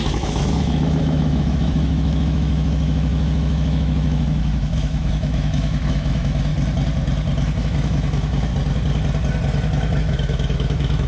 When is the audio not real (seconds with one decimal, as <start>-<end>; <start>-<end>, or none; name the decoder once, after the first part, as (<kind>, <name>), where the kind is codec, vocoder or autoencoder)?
0.0-6.5 (autoencoder, DAC-VAE); 7.6-8.5; 10.0-11.1